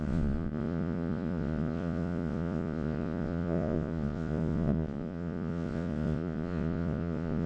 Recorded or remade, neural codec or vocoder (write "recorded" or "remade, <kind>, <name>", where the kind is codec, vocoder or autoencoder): remade, vocoder, Vocos